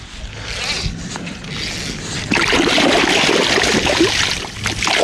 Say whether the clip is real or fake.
real